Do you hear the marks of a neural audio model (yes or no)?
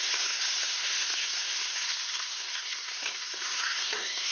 yes